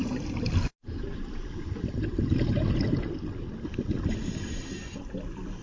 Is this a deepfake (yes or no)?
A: no